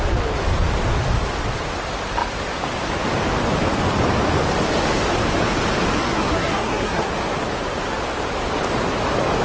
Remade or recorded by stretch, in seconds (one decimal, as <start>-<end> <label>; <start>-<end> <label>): 0.0-6.0 recorded; 6.0-7.1 remade; 7.1-9.4 recorded

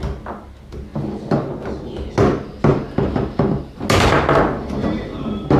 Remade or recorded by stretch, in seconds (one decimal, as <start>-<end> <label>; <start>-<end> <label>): 0.0-2.7 recorded; 2.7-3.6 remade; 3.6-4.8 recorded; 4.8-5.6 remade

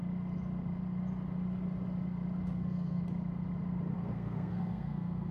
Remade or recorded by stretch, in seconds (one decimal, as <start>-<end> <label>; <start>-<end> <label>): 0.0-2.4 recorded; 2.4-3.0 remade; 3.0-3.9 recorded; 3.9-5.3 remade